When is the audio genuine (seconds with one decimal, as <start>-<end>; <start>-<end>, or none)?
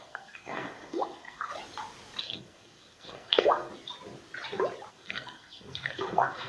1.5-2.2; 3.7-4.9